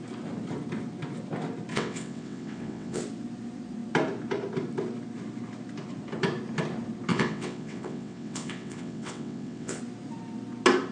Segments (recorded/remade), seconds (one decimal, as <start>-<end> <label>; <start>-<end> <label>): 0.0-1.7 recorded; 1.7-3.0 remade; 3.0-7.1 recorded; 7.1-9.8 remade; 9.8-10.9 recorded